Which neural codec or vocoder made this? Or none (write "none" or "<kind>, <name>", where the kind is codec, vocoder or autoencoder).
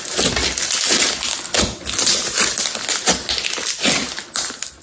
none